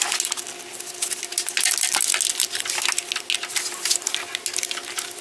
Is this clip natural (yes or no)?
yes